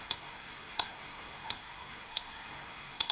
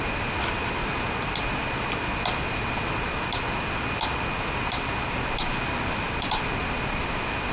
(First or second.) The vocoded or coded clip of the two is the first